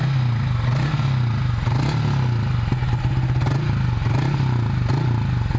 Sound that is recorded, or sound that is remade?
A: recorded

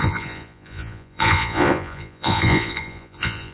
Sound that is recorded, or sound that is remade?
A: remade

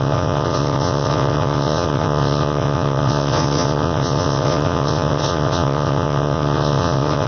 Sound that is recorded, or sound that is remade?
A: remade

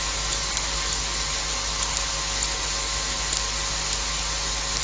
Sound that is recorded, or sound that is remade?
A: recorded